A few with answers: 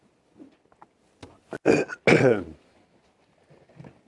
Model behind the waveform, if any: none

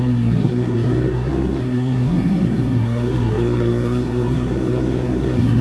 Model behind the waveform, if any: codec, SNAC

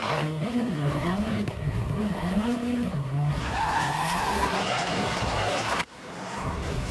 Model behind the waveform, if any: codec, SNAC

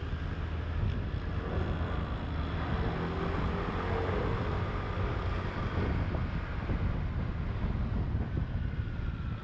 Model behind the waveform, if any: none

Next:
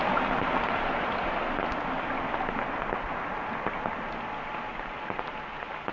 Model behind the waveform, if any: none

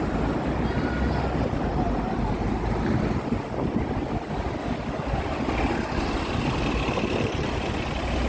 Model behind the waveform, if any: none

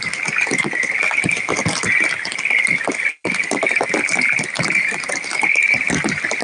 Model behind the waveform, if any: none